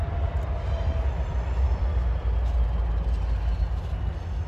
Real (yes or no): yes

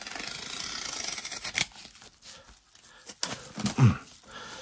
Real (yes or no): yes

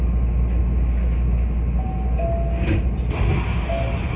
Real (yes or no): yes